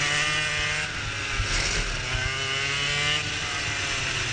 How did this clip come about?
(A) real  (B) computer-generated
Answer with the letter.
A